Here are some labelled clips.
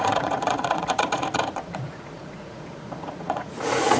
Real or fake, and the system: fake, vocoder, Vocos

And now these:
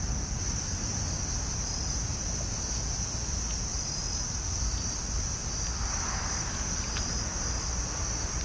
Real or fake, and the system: real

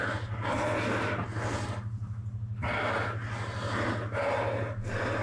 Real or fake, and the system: real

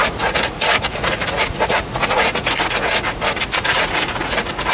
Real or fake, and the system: fake, vocoder, Vocos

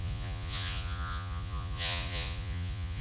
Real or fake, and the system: fake, vocoder, Vocos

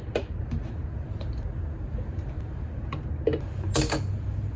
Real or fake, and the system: real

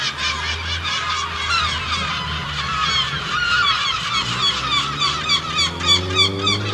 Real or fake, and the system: real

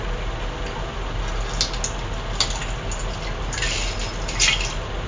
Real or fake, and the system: real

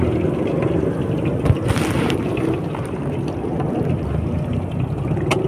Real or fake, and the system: real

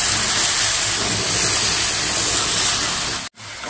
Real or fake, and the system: real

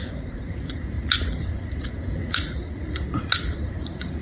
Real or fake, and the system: fake, vocoder, Vocos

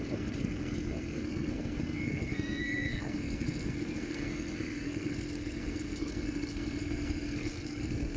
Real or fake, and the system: fake, codec, SNAC